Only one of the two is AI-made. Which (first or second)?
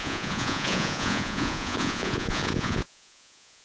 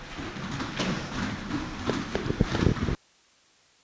first